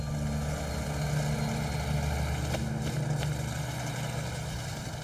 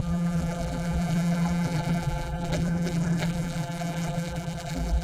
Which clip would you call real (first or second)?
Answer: first